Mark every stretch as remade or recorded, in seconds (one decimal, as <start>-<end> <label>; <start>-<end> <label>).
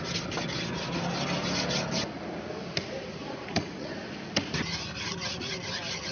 0.0-3.1 recorded; 3.1-3.9 remade; 3.9-6.1 recorded